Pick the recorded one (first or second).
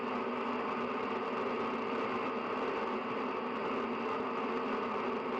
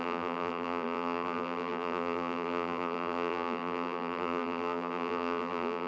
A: first